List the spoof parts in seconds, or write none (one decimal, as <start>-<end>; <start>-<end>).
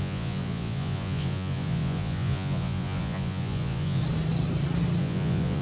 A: 0.0-4.0; 5.0-5.6